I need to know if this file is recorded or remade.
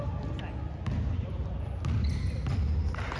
recorded